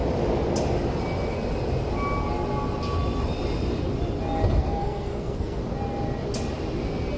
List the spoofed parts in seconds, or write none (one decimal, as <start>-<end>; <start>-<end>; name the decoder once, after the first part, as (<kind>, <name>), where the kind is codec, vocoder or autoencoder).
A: 4.6-5.6 (codec, SNAC)